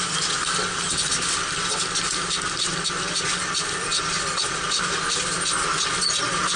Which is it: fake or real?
real